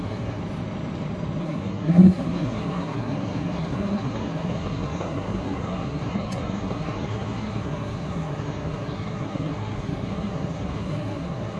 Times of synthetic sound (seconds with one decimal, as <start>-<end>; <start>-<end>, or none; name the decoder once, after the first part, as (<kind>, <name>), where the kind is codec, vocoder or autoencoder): 0.0-0.4 (codec, SNAC); 1.4-11.6